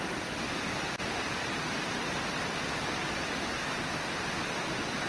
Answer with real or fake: real